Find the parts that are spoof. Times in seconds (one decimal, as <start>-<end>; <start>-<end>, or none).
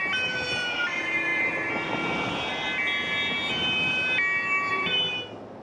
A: none